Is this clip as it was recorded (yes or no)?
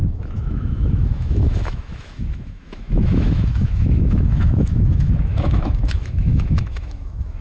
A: no